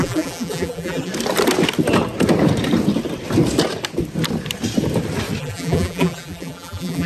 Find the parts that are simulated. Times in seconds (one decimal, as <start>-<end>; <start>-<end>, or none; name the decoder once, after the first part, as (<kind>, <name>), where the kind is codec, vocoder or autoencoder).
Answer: 0.0-1.1 (vocoder, BigVGAN v2); 5.4-7.1